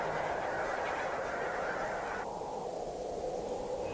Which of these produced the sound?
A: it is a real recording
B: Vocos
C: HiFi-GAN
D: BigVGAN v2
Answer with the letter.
A